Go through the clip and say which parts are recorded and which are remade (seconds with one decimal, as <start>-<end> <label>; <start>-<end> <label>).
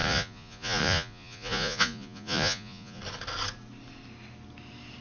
0.0-3.0 remade; 3.0-5.0 recorded